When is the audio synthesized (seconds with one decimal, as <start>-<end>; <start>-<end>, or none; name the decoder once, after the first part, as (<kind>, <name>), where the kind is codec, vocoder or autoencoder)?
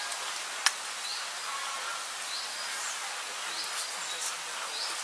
none